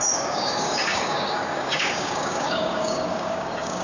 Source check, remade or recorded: remade